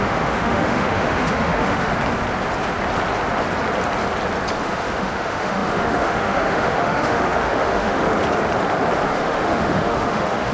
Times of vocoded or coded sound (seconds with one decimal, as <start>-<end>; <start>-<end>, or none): 0.0-1.9; 4.6-8.0; 9.1-10.5